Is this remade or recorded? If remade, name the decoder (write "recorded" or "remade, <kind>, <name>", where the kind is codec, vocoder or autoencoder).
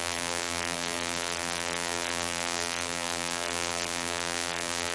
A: remade, vocoder, BigVGAN v2